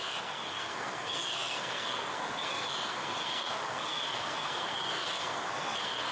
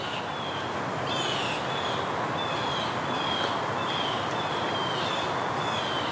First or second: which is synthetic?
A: first